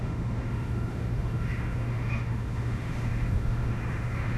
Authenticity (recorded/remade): remade